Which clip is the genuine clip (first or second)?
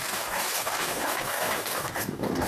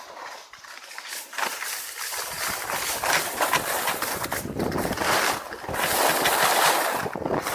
second